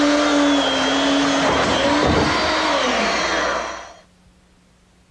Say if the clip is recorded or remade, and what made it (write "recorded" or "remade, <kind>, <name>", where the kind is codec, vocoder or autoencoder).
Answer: recorded